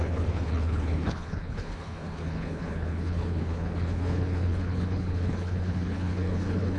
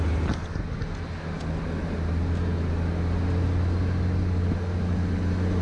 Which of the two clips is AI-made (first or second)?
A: first